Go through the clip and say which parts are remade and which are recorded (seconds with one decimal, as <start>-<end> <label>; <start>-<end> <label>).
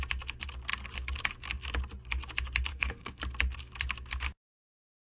0.0-2.7 recorded; 2.7-3.2 remade; 3.2-5.1 recorded